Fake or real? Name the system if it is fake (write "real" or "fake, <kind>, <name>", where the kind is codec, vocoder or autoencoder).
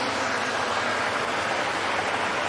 real